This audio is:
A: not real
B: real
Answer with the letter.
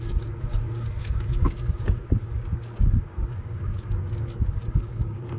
A